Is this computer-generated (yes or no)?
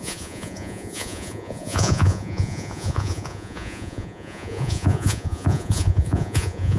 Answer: yes